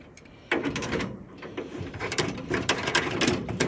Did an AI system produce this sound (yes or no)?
yes